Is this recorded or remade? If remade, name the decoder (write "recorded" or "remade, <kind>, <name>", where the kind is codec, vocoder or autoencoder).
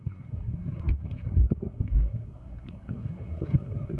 remade, codec, SNAC